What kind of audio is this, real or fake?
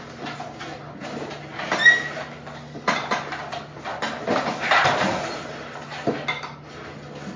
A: real